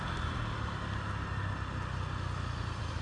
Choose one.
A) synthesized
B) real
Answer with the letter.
B